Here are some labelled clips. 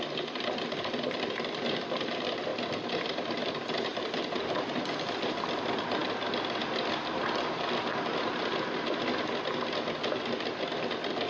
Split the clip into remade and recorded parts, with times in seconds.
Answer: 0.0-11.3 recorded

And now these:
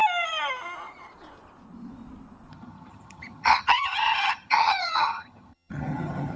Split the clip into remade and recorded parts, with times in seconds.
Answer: 0.0-2.5 recorded; 2.5-6.4 remade